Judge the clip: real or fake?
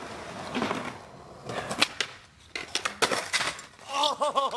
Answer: real